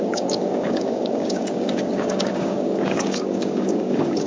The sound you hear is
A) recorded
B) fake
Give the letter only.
B